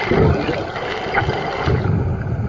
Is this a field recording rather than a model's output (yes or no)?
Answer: yes